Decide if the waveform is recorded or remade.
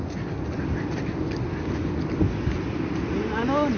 recorded